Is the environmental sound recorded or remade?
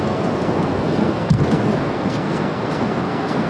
remade